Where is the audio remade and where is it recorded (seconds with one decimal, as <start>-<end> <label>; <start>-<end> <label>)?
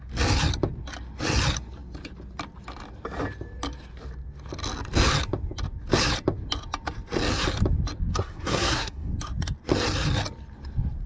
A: 0.0-8.1 recorded; 8.1-9.1 remade; 9.1-11.1 recorded